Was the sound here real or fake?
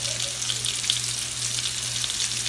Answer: real